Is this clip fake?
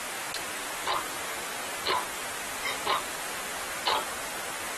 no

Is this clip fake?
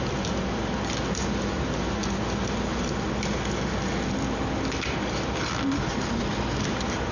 no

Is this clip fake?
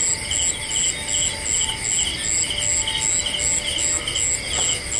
no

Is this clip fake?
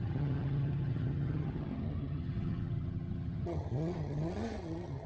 yes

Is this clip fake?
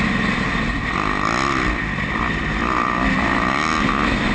no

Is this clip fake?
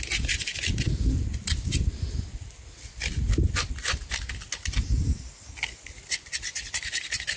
no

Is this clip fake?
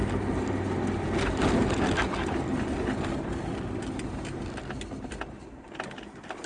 no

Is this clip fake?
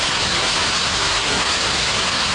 yes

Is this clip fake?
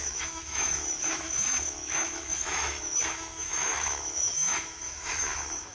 yes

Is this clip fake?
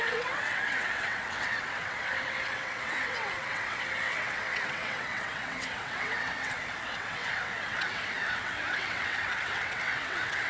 yes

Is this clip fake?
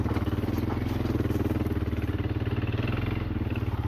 no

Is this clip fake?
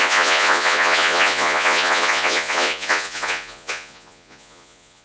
yes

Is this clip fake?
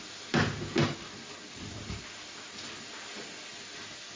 no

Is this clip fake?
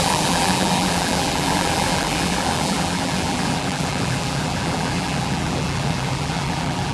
yes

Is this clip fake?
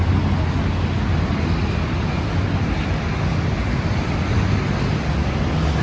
no